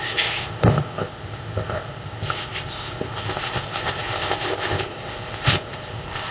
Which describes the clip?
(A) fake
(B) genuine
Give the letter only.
A